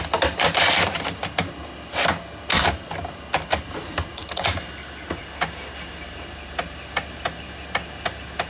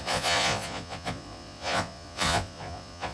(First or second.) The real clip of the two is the first